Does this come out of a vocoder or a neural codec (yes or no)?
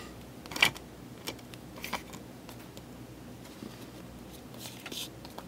no